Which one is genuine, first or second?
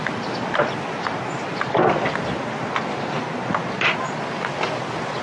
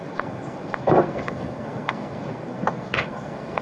first